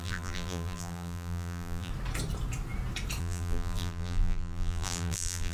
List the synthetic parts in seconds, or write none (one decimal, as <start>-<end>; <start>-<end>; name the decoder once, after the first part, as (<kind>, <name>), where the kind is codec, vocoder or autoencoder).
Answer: 0.0-1.9 (vocoder, BigVGAN v2); 3.2-5.5